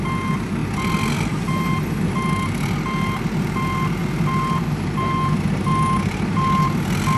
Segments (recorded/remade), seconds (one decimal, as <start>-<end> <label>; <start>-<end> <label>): 0.0-7.2 recorded